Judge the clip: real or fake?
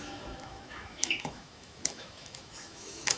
fake